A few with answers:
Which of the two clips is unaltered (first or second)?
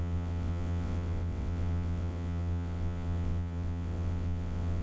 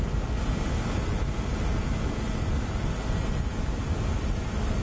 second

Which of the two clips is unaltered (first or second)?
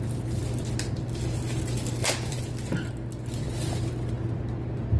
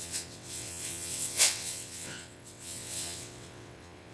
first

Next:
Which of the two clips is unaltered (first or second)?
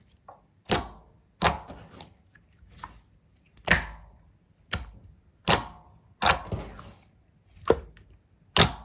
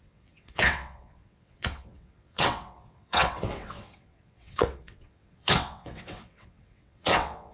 first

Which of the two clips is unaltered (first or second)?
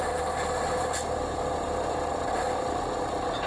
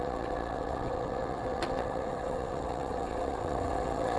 first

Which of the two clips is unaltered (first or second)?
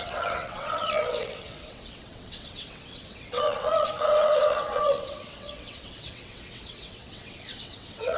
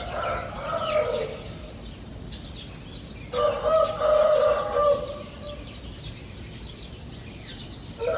second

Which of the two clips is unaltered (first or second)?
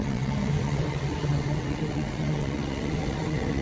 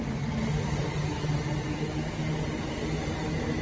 second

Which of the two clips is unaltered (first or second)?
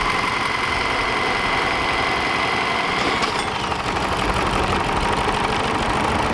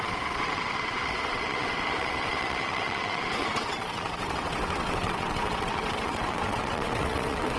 first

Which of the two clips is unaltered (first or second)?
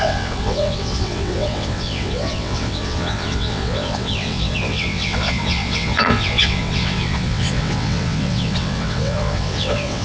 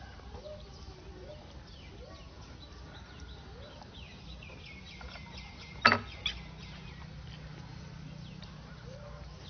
second